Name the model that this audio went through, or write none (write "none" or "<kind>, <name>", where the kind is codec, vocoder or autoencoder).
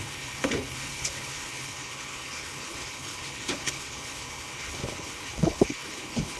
codec, HILCodec